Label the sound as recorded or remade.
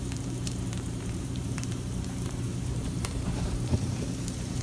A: remade